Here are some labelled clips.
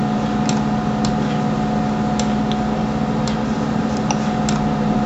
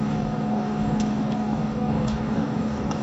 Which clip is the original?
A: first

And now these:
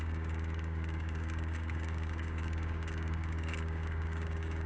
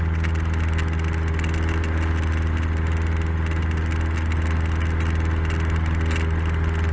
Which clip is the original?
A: second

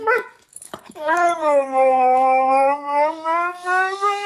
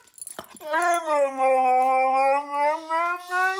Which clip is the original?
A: second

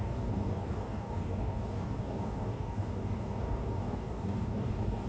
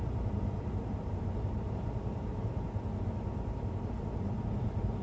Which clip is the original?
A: second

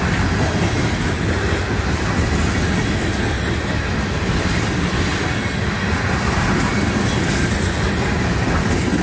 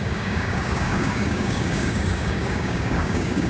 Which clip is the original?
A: first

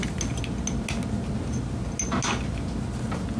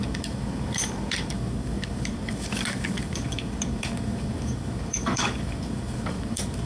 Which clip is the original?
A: first